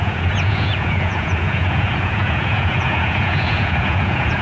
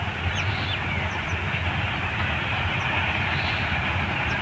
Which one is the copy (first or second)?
first